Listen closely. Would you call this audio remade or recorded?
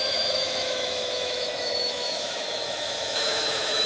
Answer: remade